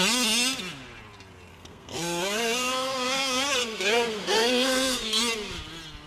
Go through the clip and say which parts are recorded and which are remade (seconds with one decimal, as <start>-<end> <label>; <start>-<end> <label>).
0.0-1.5 recorded; 1.5-5.2 remade; 5.2-6.1 recorded